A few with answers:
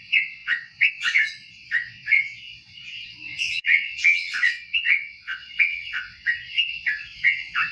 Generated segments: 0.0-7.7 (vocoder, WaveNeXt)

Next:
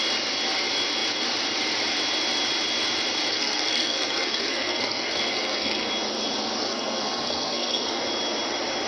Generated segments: 3.3-5.9 (codec, SNAC); 6.6-8.0

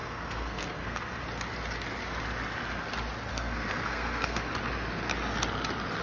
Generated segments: 0.0-1.2 (codec, SNAC); 3.3-4.5

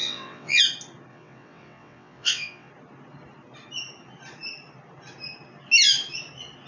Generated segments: 0.0-0.6 (vocoder, WaveNeXt); 1.1-2.7